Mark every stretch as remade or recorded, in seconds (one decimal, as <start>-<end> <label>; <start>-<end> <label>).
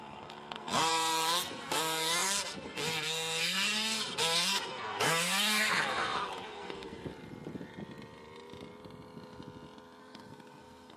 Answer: 0.0-7.0 remade; 7.0-10.0 recorded; 10.0-11.0 remade